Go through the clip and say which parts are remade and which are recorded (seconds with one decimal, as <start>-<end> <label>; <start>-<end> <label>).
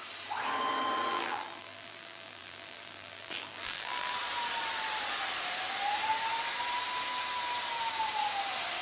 0.0-1.1 recorded; 1.1-4.1 remade; 4.1-8.8 recorded